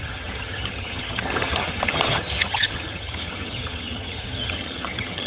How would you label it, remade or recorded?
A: remade